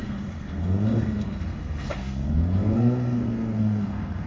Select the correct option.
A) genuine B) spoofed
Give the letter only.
B